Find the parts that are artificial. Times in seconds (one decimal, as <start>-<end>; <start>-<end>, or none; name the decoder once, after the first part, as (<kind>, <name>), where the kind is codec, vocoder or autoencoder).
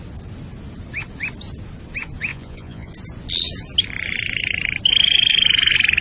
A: 2.3-2.9 (vocoder, Vocos)